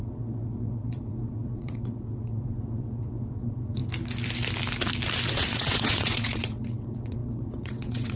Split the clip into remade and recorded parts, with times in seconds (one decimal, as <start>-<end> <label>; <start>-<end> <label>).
0.0-3.8 remade; 3.8-5.3 recorded; 5.3-8.2 remade